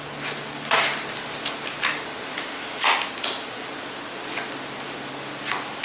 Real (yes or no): yes